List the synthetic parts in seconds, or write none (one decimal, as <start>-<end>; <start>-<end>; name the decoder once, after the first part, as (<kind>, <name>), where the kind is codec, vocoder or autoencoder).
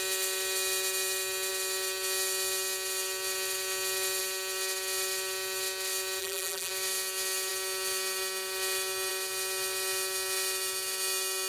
6.2-6.7 (vocoder, BigVGAN v2)